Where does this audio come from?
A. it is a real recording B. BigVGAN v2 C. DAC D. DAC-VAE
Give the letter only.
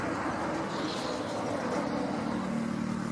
A